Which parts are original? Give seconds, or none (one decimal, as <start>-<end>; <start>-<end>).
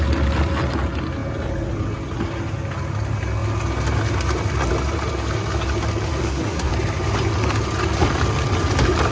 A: 0.0-6.2; 6.7-9.1